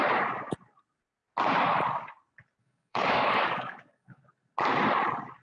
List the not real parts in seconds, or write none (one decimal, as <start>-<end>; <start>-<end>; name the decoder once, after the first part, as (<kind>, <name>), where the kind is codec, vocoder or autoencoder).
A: 2.6-4.2 (codec, DAC)